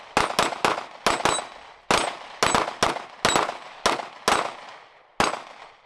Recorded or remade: recorded